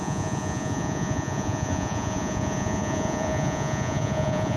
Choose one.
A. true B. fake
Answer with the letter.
B